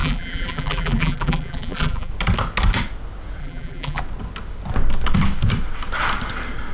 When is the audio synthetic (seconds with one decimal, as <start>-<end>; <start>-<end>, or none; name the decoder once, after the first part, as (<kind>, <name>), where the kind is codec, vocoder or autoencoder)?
0.0-2.1 (vocoder, BigVGAN v2); 3.4-4.0